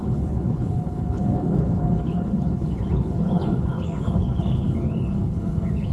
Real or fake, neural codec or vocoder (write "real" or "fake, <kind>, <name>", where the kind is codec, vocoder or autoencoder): fake, codec, HILCodec